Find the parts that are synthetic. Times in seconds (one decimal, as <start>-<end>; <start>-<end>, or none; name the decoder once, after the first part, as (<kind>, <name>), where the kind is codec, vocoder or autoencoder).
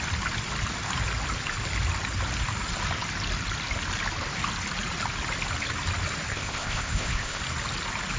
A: 6.3-7.4 (codec, ZipCodec)